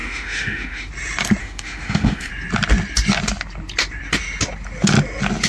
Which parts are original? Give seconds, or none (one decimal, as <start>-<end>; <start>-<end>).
0.9-1.4; 2.3-5.5